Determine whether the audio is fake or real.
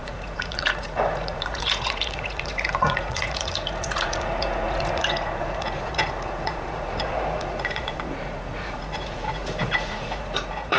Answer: fake